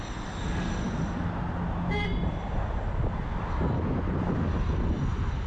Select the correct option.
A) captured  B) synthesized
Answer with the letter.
A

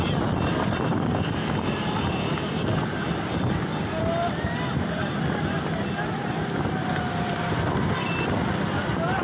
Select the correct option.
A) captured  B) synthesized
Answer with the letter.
B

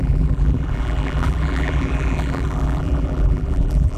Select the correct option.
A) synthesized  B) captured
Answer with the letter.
A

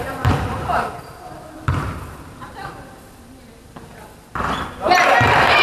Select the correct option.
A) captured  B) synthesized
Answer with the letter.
A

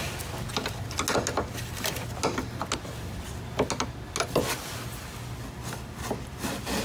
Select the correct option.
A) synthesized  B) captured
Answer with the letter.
B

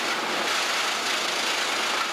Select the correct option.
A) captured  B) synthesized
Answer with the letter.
A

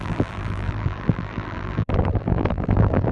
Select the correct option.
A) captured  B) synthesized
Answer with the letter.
B